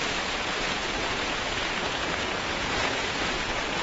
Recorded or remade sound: remade